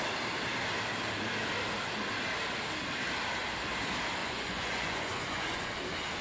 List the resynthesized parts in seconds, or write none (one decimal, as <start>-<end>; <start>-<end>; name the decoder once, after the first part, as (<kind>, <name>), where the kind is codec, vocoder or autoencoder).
4.2-5.8 (vocoder, Vocos)